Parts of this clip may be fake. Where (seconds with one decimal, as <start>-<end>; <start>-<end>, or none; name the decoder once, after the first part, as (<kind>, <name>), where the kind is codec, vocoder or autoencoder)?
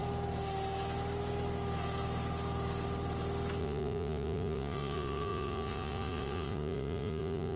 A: 3.6-7.6 (vocoder, Vocos)